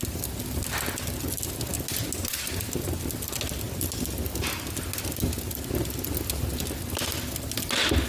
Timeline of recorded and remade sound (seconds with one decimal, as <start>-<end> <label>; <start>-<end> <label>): 0.0-8.1 recorded